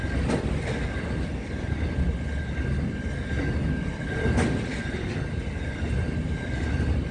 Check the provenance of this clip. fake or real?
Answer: real